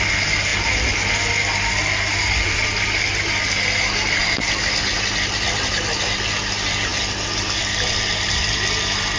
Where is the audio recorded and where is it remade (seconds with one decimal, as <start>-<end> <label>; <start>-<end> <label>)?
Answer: 0.0-9.2 recorded